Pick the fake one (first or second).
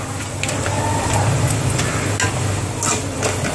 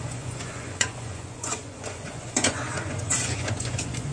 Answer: second